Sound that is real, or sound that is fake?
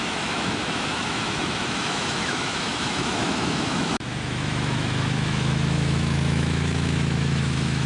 fake